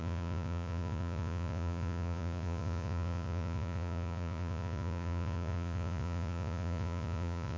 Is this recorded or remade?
remade